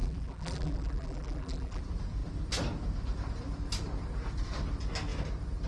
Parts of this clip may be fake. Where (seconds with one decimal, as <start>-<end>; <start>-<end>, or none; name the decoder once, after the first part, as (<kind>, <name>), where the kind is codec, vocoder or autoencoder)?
0.0-1.8 (vocoder, BigVGAN v2)